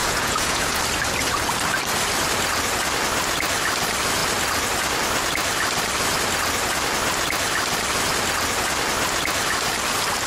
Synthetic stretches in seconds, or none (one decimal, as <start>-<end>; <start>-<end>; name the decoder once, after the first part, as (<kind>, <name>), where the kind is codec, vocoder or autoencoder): 0.0-0.8 (vocoder, Vocos)

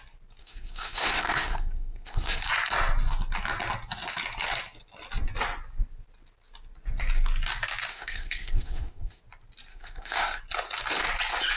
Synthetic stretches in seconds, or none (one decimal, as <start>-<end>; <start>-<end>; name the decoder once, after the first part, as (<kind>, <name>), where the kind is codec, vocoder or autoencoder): 0.4-2.4 (codec, SNAC); 7.9-9.2; 9.7-10.4

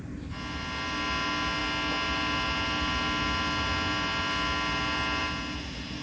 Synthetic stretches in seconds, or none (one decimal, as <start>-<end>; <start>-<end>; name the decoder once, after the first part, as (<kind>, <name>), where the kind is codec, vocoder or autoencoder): none